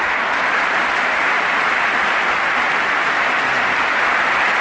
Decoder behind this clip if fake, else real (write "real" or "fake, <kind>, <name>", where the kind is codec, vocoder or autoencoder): real